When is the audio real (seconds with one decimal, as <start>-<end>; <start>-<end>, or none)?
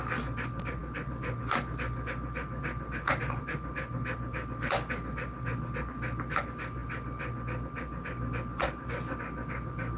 0.0-10.0